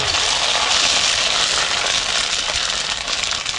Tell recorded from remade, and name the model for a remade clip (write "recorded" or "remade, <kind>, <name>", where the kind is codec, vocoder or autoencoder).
recorded